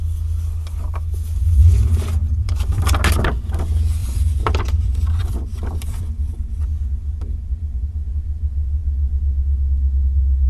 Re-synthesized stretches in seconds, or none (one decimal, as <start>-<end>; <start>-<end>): 2.2-2.8; 4.0-6.3